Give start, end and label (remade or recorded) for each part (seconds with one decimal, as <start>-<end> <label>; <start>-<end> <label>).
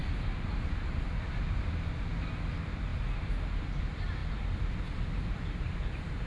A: 0.0-6.3 recorded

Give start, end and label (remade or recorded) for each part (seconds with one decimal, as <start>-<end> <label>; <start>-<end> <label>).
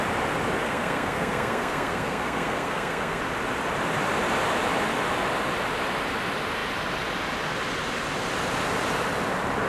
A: 0.0-0.6 recorded; 0.6-3.2 remade; 3.2-9.7 recorded